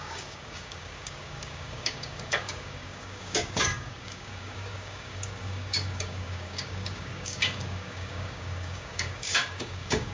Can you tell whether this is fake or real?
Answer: fake